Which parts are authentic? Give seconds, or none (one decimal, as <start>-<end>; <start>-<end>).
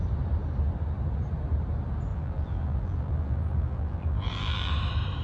0.0-2.1; 4.7-5.2